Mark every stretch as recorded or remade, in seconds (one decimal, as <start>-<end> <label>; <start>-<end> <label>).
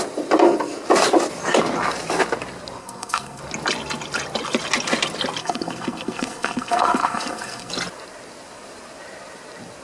0.0-2.8 recorded; 2.8-3.4 remade; 3.4-5.4 recorded; 5.4-7.7 remade; 7.7-9.8 recorded